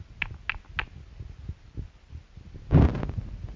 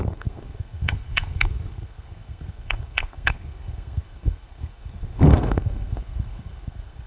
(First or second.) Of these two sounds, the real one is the first